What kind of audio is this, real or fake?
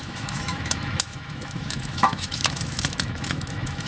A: fake